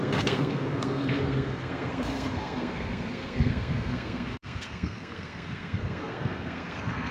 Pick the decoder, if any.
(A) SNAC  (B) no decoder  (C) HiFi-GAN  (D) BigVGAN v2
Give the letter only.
A